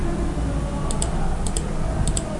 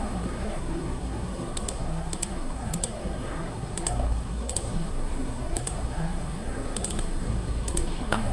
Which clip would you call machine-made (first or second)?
second